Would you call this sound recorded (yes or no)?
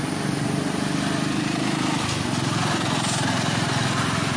yes